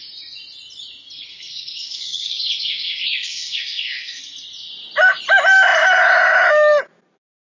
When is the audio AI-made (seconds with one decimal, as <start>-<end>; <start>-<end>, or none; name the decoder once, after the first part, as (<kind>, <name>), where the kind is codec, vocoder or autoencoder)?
1.3-4.2 (codec, SNAC)